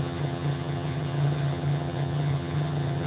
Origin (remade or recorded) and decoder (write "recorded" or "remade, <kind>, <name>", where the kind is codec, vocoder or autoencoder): remade, vocoder, HiFi-GAN